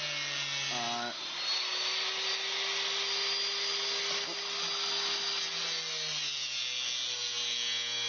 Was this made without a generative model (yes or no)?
yes